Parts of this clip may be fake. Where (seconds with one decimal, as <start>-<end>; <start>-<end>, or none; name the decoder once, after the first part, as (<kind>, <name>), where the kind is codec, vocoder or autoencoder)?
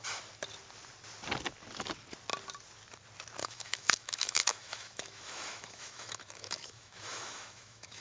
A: 3.4-8.0 (autoencoder, DAC-VAE)